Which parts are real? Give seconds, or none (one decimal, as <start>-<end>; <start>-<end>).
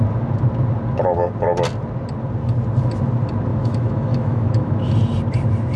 0.0-3.5; 4.9-5.8